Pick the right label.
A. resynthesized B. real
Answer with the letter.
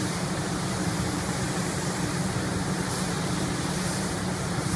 A